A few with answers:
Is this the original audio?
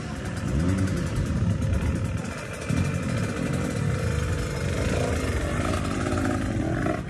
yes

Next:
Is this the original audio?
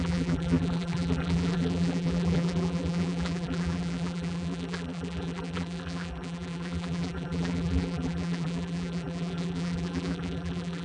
no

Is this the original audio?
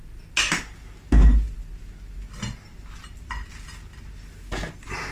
yes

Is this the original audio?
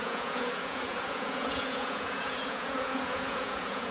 no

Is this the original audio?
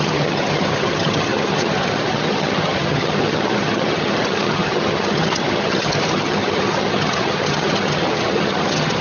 no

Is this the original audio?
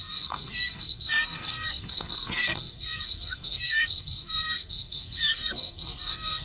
no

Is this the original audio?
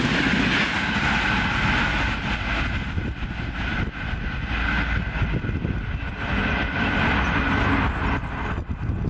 yes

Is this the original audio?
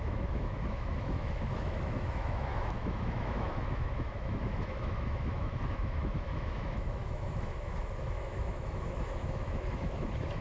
no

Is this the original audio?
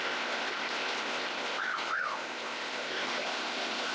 no